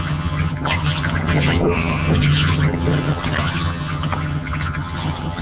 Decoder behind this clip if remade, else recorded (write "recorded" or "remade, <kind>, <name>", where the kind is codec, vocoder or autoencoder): remade, vocoder, HiFi-GAN